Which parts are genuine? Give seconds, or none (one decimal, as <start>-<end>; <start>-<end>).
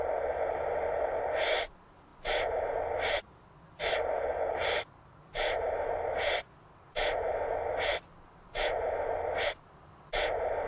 0.0-4.6; 6.6-10.7